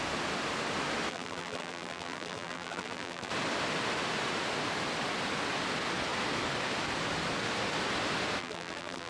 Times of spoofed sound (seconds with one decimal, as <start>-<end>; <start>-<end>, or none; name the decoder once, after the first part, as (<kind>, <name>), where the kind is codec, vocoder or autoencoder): 1.1-3.3 (vocoder, BigVGAN v2); 8.4-9.1